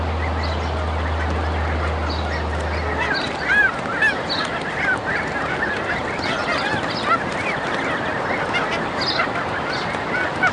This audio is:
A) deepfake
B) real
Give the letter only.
B